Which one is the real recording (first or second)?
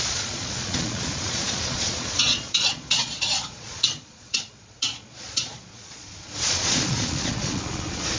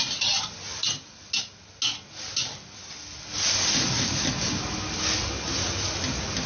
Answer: second